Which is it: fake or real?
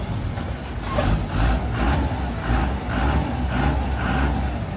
real